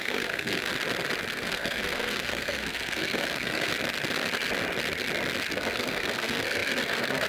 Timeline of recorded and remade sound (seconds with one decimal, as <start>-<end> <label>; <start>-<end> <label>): 0.0-0.7 remade; 0.7-1.3 recorded; 1.3-3.7 remade; 3.7-5.5 recorded; 5.5-7.3 remade